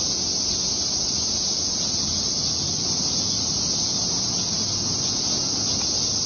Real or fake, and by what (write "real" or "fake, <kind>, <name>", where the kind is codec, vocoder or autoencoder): real